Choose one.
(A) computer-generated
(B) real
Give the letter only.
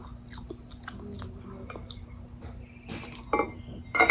B